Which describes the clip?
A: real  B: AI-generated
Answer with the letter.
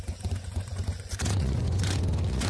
B